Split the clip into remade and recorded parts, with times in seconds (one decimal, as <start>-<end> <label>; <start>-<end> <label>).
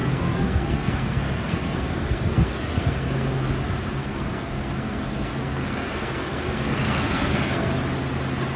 0.0-3.5 remade; 3.5-4.0 recorded; 4.0-7.7 remade; 7.7-8.6 recorded